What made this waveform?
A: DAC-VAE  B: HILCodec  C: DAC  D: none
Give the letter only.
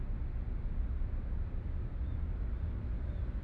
D